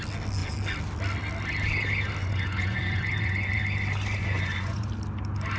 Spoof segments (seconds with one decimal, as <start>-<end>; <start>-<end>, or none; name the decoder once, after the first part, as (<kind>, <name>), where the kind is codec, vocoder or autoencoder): 2.2-3.6 (vocoder, Vocos); 4.2-4.9